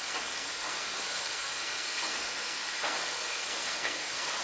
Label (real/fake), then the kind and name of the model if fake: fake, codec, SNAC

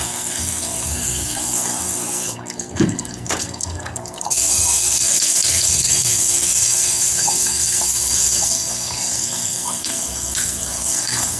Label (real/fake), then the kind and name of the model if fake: fake, codec, SNAC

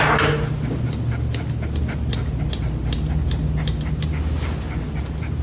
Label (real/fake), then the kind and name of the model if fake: real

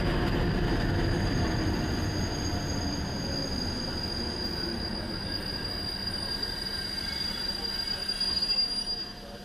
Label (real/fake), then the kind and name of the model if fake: real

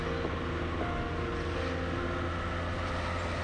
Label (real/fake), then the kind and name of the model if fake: real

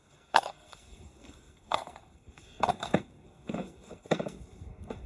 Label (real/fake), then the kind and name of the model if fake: fake, codec, SNAC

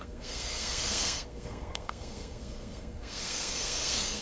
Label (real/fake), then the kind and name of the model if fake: fake, codec, SNAC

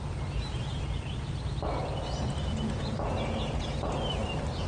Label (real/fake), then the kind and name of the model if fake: real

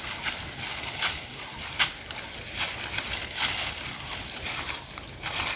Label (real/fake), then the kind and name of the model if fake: real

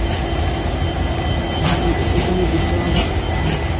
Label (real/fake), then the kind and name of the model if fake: real